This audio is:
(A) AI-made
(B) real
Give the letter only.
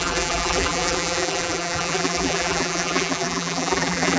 A